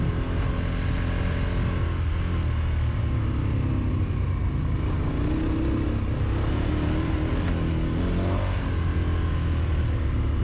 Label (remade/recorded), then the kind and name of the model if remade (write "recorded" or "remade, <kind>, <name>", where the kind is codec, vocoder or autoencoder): recorded